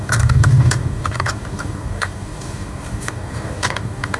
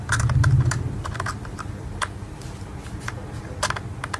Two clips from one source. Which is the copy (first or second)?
first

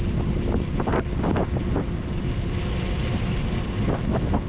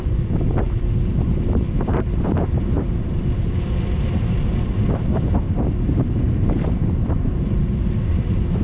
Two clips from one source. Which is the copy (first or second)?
second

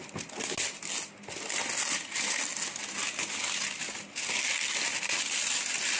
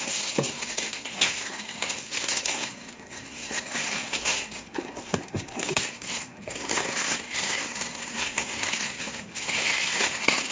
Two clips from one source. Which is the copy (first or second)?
second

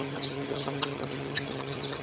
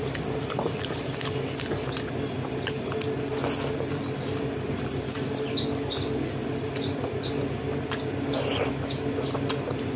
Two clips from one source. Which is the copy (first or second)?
first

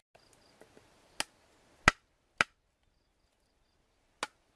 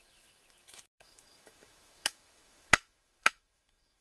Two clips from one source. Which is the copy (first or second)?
second